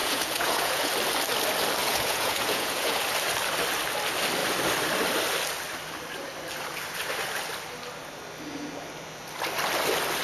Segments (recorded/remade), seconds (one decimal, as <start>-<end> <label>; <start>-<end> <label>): 0.0-0.9 remade; 0.9-1.8 recorded; 1.8-3.0 remade; 3.0-10.2 recorded